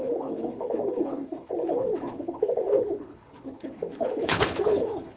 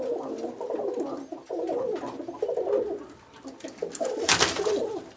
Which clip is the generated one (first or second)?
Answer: first